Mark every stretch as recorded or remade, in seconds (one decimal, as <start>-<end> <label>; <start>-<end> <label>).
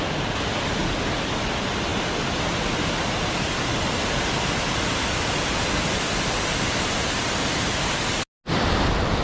0.0-9.2 recorded